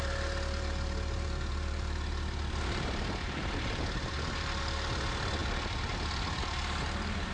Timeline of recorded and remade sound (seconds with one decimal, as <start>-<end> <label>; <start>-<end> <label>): 0.0-7.3 remade